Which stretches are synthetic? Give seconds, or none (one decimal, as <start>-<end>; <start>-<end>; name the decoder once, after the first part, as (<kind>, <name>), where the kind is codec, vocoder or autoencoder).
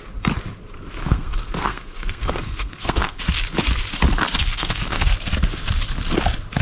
1.0-3.2 (codec, SNAC); 4.4-5.1